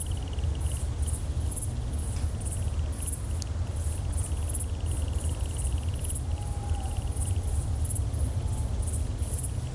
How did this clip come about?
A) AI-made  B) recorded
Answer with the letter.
B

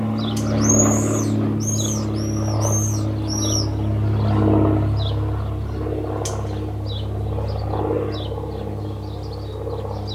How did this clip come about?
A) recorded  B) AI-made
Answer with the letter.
A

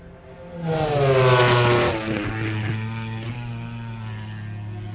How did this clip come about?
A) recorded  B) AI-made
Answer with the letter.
A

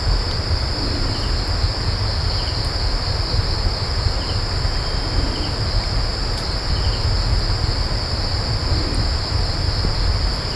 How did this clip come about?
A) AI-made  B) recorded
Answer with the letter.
B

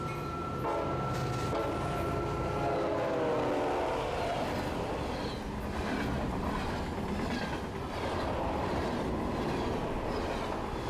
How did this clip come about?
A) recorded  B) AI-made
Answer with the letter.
A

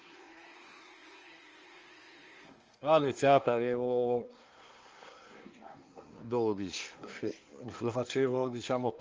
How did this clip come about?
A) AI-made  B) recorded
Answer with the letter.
A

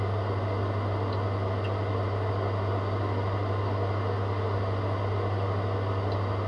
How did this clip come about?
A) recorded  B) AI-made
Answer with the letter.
A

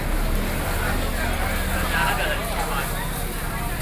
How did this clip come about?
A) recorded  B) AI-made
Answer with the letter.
A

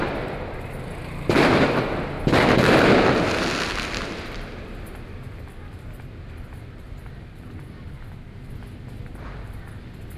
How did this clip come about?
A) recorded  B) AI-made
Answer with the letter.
A